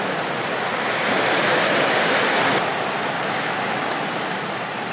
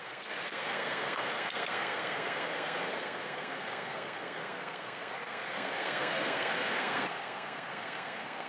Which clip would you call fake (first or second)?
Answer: second